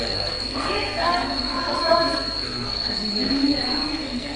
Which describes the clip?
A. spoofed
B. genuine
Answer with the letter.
A